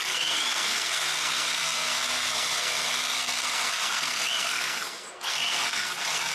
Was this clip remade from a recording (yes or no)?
yes